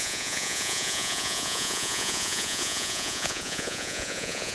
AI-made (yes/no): yes